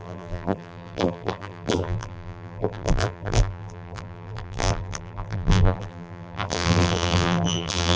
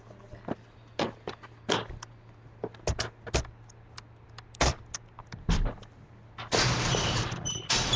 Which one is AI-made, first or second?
first